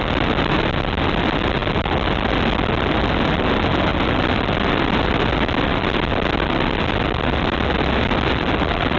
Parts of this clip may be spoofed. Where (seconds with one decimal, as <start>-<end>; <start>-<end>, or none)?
0.0-9.0